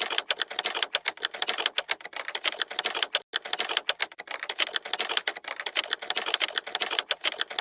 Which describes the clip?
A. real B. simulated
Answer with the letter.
A